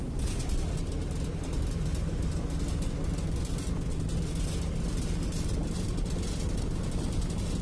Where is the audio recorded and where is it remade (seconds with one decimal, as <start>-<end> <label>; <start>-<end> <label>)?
0.0-7.6 recorded